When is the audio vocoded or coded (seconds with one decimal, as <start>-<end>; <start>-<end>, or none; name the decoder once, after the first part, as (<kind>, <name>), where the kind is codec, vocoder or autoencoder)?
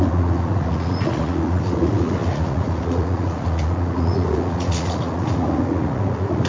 0.0-6.5 (vocoder, Vocos)